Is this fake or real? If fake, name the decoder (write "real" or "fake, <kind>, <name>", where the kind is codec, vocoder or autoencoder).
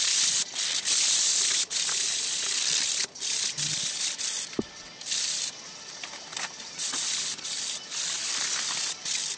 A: real